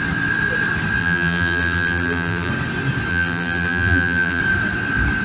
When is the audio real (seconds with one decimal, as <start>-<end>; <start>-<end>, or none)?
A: 0.0-1.0; 2.5-3.1; 4.4-5.2